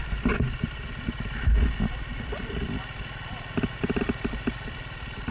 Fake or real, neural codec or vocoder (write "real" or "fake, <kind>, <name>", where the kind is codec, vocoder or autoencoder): real